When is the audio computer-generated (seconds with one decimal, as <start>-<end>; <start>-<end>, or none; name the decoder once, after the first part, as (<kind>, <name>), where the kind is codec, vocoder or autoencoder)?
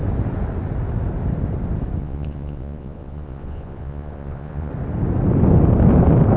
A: 2.0-4.7 (vocoder, Vocos)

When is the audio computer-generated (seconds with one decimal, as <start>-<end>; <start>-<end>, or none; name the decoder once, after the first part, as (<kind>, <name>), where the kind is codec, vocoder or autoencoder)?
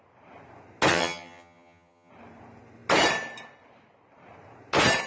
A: 0.9-2.1 (vocoder, HiFi-GAN)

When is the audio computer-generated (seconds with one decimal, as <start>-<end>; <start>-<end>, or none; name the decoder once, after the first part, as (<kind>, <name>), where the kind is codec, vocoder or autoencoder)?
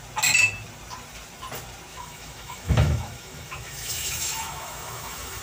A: 1.9-5.4 (autoencoder, DAC-VAE)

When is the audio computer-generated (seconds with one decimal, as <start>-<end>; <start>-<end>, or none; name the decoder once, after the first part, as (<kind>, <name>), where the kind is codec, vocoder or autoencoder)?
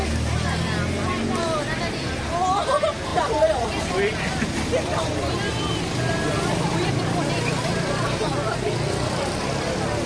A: none